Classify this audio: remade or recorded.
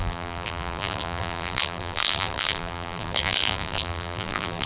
remade